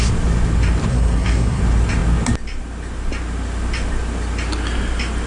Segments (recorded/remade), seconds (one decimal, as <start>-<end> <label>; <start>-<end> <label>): 0.0-0.9 recorded; 0.9-1.6 remade; 1.6-5.3 recorded